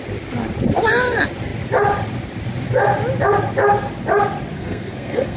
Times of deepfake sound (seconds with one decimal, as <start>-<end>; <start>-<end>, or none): 4.5-5.4